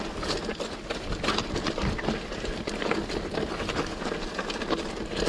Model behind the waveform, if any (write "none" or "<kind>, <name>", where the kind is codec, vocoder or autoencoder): none